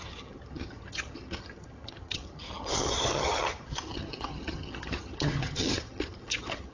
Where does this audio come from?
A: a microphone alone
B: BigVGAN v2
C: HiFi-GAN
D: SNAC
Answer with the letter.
C